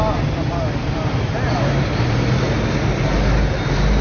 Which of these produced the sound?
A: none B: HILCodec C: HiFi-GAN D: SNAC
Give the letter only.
A